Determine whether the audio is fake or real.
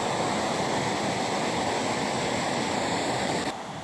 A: real